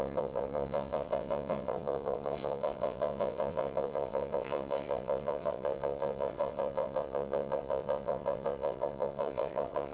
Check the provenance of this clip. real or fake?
fake